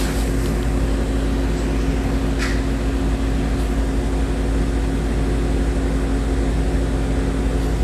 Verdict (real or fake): real